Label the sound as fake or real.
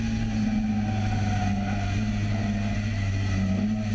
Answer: real